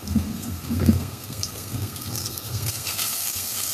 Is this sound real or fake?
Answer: fake